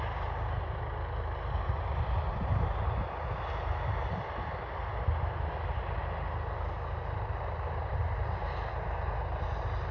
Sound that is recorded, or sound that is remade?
recorded